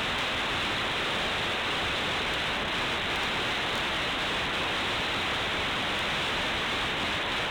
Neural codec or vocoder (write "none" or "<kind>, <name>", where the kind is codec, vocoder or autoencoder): vocoder, BigVGAN v2